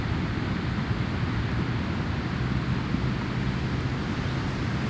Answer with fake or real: real